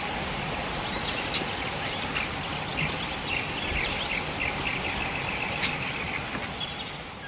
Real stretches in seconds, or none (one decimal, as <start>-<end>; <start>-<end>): 0.0-7.3